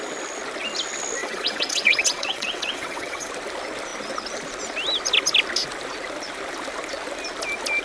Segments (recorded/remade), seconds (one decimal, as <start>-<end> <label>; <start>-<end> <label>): 0.0-1.2 recorded; 1.2-3.3 remade; 3.3-7.8 recorded